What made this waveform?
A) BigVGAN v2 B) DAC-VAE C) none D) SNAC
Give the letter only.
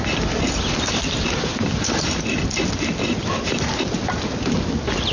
C